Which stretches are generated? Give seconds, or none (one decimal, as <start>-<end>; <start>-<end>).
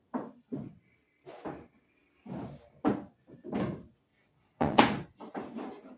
4.1-4.8